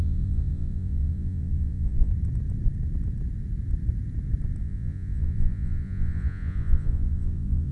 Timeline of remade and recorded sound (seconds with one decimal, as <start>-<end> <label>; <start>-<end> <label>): 0.0-2.1 remade; 2.1-4.6 recorded; 4.6-7.7 remade